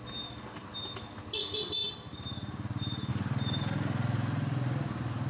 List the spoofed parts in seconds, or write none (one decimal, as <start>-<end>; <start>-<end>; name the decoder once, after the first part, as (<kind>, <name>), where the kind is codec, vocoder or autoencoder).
none